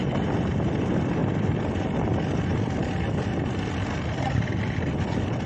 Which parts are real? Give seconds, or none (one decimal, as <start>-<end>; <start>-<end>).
0.0-1.2; 1.7-2.5; 3.1-5.5